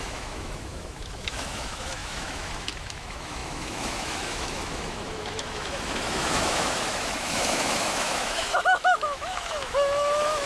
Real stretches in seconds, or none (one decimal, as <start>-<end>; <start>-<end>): none